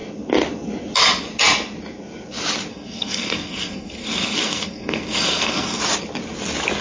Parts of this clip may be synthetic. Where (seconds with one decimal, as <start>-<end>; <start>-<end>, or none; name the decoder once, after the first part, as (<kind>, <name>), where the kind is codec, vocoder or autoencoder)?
2.7-5.8 (codec, SNAC)